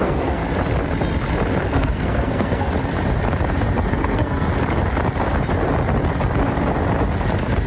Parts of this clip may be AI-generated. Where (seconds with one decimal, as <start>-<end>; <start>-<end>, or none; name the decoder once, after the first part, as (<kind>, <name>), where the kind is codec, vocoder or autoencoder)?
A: 0.0-0.4 (codec, SNAC); 1.6-2.7; 3.9-4.5